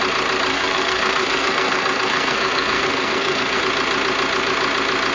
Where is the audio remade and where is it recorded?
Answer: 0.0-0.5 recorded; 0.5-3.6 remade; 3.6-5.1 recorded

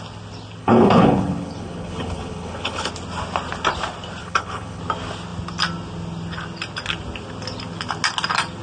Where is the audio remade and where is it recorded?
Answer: 0.0-0.6 recorded; 0.6-2.9 remade; 2.9-4.2 recorded; 4.2-4.8 remade; 4.8-8.6 recorded

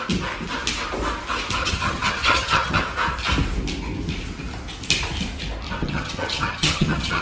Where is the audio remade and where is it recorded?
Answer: 0.0-1.6 recorded; 1.6-2.8 remade; 2.8-5.8 recorded; 5.8-7.2 remade

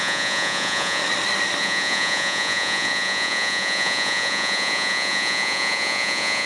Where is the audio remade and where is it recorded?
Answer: 0.0-1.0 remade; 1.0-1.6 recorded; 1.6-6.5 remade

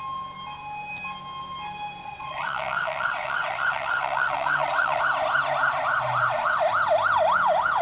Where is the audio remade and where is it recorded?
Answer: 0.0-2.0 recorded; 2.0-5.0 remade; 5.0-7.8 recorded